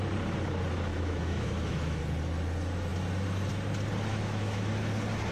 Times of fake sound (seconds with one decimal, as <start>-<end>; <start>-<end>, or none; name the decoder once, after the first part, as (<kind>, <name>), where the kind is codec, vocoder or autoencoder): 0.9-2.0 (autoencoder, DAC-VAE); 4.1-4.7